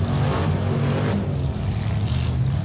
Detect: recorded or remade recorded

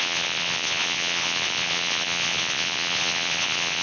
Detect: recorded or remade remade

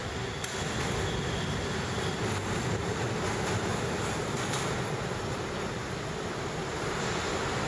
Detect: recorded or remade recorded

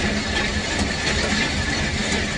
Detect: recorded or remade recorded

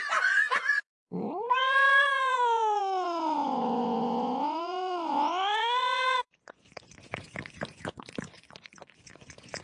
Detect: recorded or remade remade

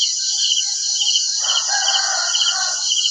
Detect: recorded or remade remade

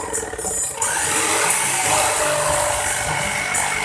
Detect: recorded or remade recorded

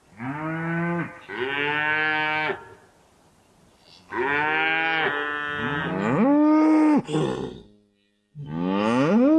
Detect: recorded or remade recorded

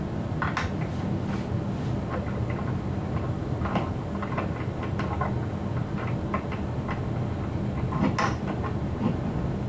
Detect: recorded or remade recorded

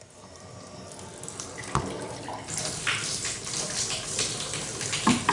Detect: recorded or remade recorded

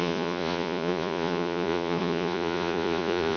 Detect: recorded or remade remade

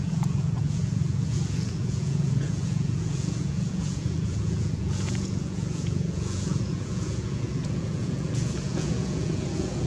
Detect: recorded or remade remade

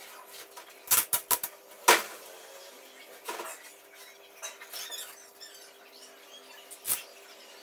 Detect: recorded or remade recorded